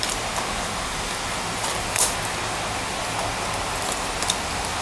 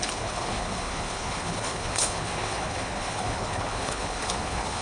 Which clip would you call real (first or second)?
first